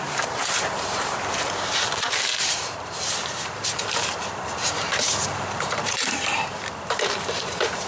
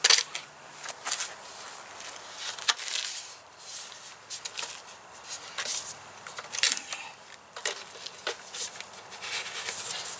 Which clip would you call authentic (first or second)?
second